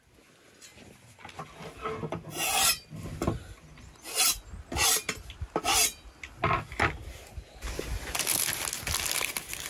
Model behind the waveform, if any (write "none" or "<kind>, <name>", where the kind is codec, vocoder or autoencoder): none